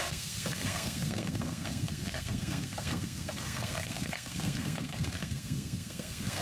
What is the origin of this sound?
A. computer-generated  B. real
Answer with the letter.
A